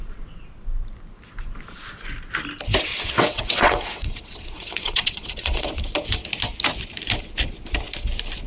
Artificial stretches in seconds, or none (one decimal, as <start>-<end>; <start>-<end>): 2.9-5.7